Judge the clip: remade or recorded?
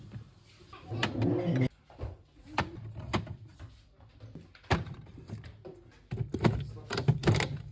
recorded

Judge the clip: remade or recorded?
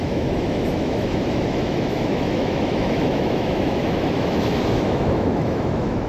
remade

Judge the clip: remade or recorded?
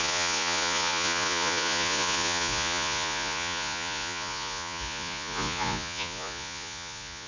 remade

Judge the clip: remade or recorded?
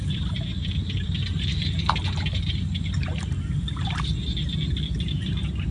recorded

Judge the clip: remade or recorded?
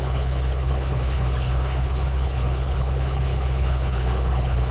remade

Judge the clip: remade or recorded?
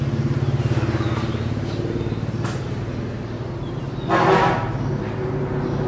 recorded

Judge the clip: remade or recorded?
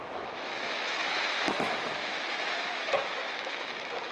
remade